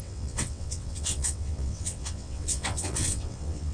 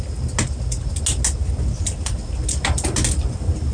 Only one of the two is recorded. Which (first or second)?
second